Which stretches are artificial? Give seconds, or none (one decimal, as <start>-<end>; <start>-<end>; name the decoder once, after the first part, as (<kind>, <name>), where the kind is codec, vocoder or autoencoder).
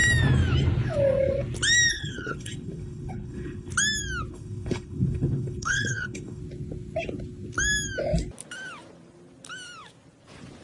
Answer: 1.9-3.7 (codec, HILCodec); 4.3-6.4